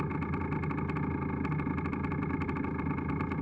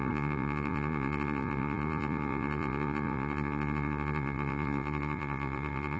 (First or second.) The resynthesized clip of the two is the second